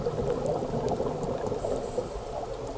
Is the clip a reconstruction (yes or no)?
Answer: no